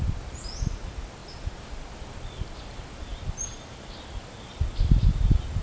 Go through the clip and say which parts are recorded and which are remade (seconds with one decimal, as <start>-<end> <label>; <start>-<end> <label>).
0.0-5.6 recorded